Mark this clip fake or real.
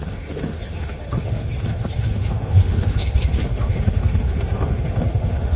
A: fake